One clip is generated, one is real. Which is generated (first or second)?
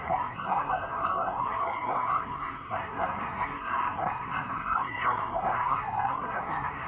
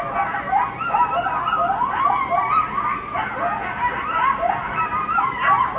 first